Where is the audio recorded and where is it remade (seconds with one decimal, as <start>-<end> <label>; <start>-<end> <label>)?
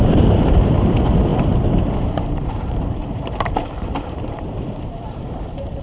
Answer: 0.0-5.8 remade